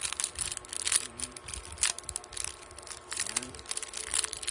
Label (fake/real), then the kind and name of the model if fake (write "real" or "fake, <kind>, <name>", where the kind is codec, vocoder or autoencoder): real